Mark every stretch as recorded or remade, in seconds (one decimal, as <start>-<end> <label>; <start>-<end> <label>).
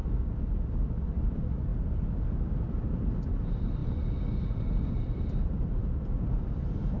0.0-0.7 recorded; 0.7-1.7 remade; 1.7-3.3 recorded; 3.3-5.8 remade; 5.8-6.3 recorded; 6.3-7.0 remade